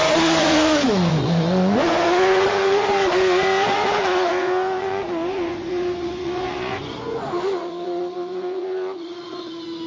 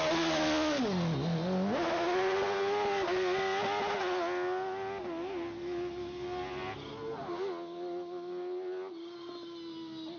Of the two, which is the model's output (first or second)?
first